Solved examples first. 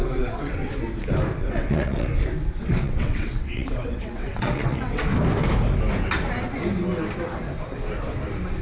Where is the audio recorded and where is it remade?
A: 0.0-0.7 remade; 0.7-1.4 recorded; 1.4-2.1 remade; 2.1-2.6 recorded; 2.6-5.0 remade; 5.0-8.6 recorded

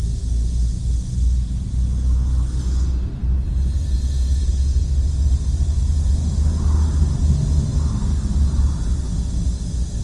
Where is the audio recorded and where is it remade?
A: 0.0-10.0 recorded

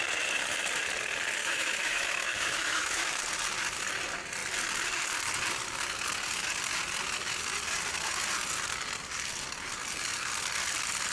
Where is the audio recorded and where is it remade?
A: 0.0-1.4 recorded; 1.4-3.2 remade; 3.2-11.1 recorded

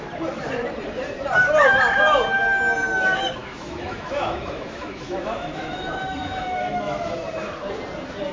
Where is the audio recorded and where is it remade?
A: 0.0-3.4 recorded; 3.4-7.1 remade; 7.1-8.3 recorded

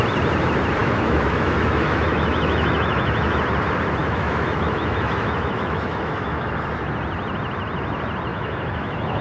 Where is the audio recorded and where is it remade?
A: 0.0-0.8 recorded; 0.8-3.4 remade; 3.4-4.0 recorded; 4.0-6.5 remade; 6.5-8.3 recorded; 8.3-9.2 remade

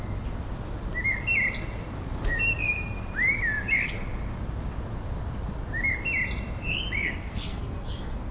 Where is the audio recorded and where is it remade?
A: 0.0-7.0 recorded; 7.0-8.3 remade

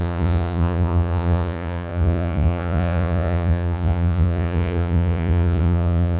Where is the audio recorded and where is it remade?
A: 0.0-6.2 remade